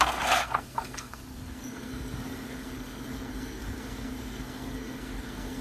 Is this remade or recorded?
remade